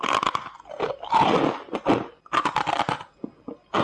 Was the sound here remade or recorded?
recorded